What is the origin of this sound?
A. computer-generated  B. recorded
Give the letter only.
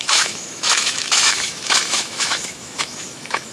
A